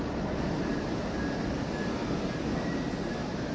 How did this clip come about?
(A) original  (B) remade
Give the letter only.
A